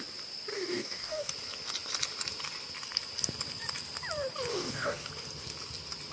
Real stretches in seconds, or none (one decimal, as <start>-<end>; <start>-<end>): 0.0-0.5; 1.3-4.5; 5.1-6.1